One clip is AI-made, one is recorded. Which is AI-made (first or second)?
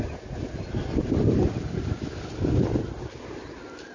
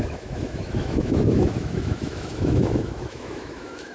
second